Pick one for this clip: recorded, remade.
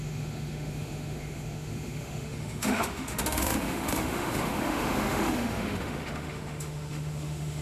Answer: remade